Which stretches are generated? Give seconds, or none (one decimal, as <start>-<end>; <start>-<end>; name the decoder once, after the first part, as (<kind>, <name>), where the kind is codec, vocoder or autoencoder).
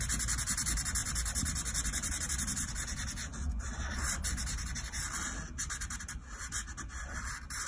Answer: none